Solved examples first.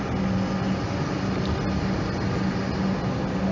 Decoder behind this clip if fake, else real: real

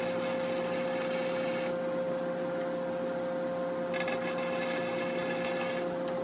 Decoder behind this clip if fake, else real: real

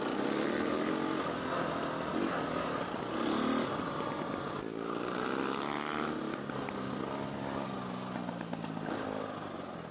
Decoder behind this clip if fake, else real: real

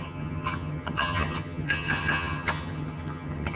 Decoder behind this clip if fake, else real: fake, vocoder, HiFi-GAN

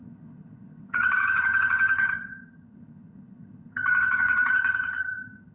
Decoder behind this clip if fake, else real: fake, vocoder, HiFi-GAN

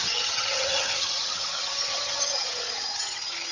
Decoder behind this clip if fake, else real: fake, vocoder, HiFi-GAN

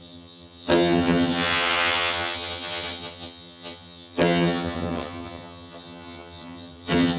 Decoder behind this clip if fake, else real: fake, vocoder, HiFi-GAN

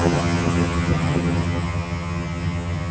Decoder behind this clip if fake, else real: fake, vocoder, HiFi-GAN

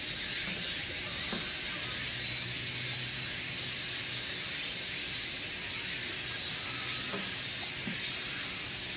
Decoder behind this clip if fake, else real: real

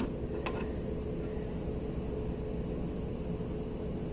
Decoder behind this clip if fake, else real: real